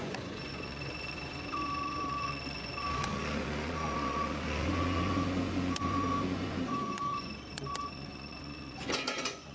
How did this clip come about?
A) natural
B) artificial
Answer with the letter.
B